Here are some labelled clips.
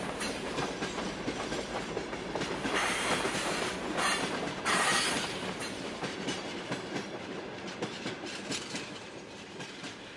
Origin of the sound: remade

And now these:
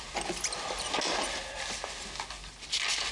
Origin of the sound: recorded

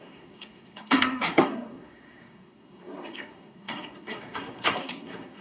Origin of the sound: remade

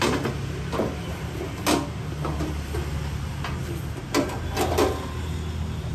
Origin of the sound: recorded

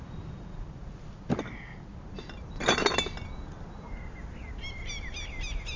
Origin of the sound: recorded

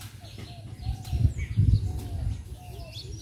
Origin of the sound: recorded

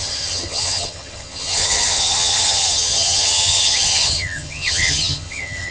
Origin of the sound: remade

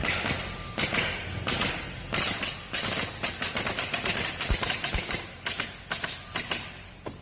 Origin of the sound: recorded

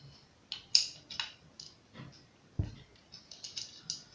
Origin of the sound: recorded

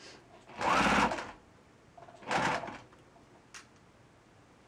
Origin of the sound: recorded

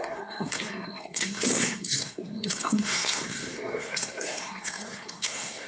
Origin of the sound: remade